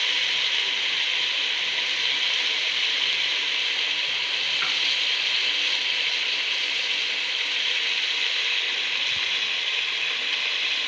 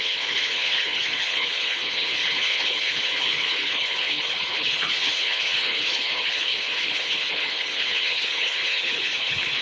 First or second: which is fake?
second